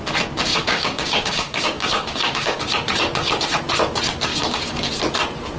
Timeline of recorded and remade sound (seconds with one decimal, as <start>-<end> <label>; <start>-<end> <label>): 0.0-0.5 recorded; 0.5-2.6 remade; 2.6-4.3 recorded; 4.3-4.9 remade; 4.9-5.6 recorded